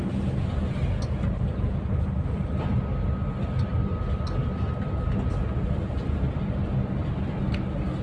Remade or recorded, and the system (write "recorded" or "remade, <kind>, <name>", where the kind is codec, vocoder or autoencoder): recorded